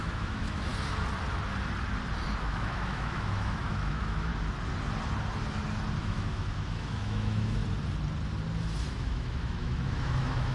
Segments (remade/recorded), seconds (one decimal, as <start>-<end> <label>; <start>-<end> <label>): 0.0-0.7 remade; 0.7-2.4 recorded; 2.4-4.3 remade; 4.3-6.0 recorded; 6.0-7.6 remade; 7.6-8.9 recorded; 8.9-10.5 remade